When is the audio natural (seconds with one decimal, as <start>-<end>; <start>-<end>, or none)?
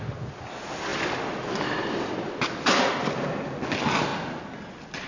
0.0-5.1